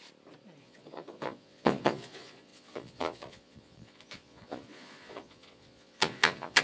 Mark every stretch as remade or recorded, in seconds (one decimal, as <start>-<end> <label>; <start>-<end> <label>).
0.0-0.6 recorded; 0.6-6.6 remade